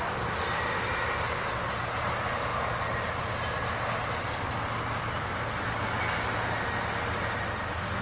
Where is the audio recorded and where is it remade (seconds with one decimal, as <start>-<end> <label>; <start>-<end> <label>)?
0.0-8.0 recorded